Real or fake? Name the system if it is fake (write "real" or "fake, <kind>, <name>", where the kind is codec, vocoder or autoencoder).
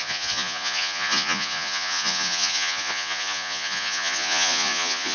fake, vocoder, Vocos